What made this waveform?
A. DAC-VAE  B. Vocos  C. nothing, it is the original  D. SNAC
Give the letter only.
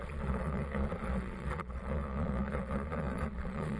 B